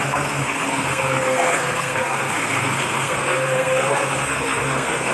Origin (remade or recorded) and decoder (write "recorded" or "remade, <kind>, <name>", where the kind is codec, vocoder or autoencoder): remade, codec, SNAC